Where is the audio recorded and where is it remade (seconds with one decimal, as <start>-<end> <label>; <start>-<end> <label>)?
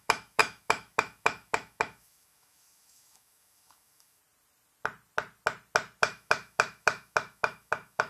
0.0-4.2 remade; 4.2-6.0 recorded; 6.0-8.1 remade